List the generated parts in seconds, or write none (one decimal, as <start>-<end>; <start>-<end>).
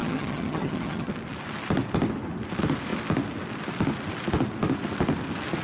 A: 0.0-1.1